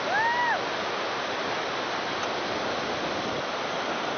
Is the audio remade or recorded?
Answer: recorded